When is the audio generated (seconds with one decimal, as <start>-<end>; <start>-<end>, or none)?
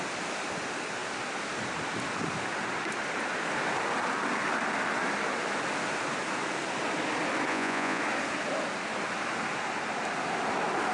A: 7.5-8.0